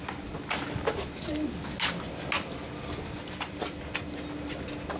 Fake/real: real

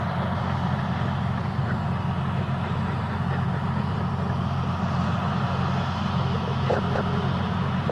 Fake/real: real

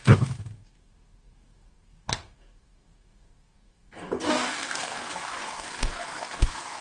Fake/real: fake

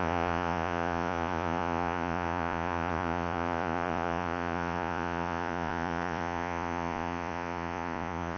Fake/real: fake